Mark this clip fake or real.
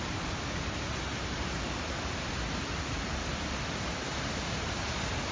real